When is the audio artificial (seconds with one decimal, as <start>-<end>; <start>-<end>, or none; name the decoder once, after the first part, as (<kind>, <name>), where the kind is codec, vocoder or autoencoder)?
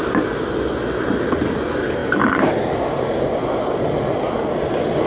none